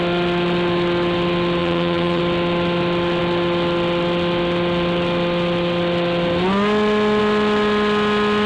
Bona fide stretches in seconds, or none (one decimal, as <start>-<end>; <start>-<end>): 0.0-1.6; 2.2-8.5